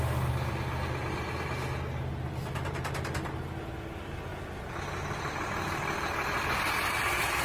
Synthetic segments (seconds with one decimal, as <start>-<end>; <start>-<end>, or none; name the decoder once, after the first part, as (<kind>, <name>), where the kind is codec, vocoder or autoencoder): none